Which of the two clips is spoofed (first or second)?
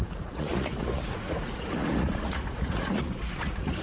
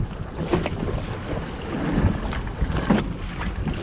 first